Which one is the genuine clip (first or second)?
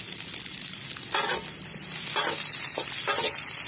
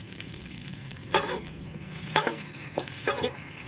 first